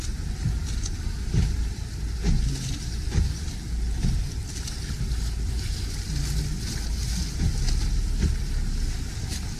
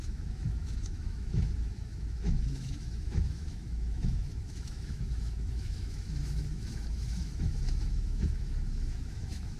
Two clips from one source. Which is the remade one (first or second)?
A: second